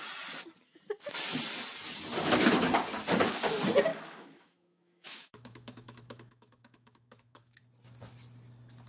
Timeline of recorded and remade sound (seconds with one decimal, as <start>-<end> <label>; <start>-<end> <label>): 0.0-3.9 recorded; 3.9-7.6 remade; 7.6-8.9 recorded